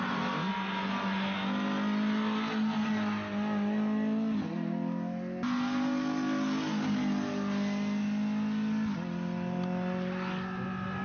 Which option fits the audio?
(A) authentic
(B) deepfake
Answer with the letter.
A